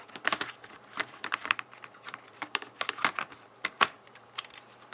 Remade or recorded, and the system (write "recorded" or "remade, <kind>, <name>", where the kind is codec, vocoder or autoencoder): remade, vocoder, BigVGAN v2